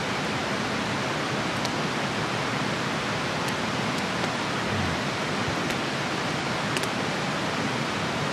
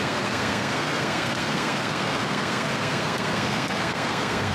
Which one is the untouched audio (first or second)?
first